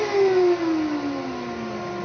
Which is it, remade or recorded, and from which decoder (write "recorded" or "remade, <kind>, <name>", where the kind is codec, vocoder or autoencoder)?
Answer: recorded